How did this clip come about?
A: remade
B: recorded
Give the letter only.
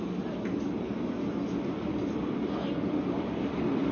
B